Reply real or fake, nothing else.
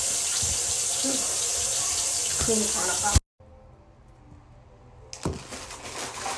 real